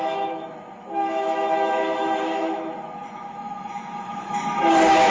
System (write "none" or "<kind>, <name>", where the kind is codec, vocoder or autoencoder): autoencoder, DAC-VAE